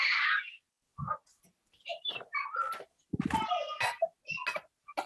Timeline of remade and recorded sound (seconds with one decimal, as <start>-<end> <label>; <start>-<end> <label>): 0.0-0.9 remade; 0.9-1.5 recorded; 1.5-2.6 remade; 2.6-5.1 recorded